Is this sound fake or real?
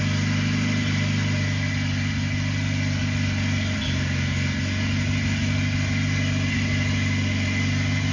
real